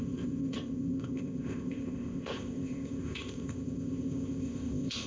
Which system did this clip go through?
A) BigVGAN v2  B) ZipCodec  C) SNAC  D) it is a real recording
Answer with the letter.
B